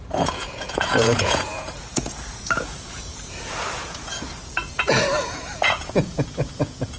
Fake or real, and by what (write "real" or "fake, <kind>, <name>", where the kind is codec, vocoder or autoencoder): fake, vocoder, Vocos